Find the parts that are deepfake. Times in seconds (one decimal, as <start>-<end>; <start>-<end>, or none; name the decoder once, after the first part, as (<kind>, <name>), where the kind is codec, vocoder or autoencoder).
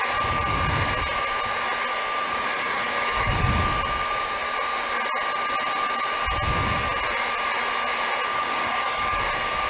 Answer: 2.5-3.6 (codec, DAC); 8.3-9.2